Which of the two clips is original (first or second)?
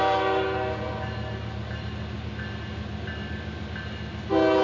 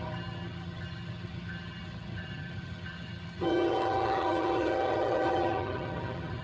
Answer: first